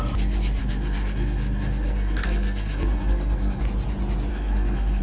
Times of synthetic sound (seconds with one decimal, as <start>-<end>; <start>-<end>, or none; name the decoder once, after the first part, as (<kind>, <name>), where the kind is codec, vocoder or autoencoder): 0.6-3.6 (codec, SNAC); 4.3-5.0